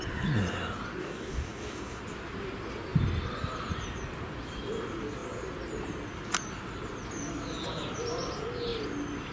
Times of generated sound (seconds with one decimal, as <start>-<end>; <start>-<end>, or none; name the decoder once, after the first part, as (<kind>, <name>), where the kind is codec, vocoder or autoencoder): 1.0-2.0 (codec, DAC)